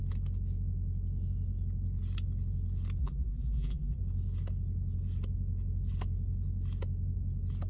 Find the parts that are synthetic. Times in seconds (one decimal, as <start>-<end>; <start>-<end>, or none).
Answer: 3.0-4.0